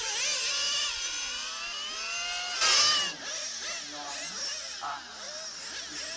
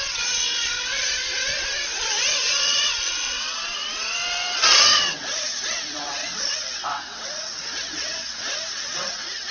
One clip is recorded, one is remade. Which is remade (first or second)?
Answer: second